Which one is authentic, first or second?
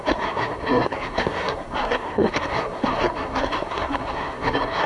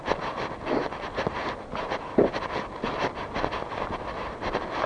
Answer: second